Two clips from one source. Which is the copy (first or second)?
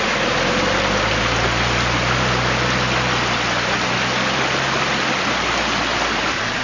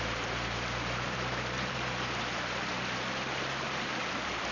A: second